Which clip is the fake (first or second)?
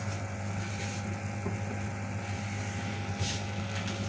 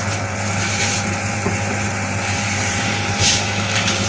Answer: second